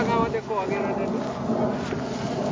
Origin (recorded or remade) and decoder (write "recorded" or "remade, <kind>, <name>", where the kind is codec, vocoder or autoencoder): recorded